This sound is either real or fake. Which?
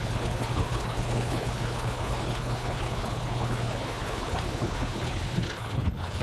fake